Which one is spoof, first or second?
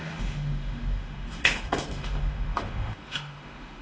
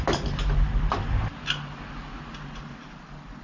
first